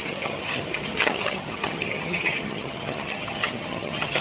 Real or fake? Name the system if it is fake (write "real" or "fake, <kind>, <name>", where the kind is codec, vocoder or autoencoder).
fake, vocoder, HiFi-GAN